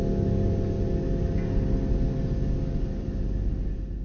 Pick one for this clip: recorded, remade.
recorded